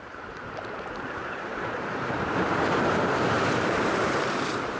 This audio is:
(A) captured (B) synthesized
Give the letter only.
B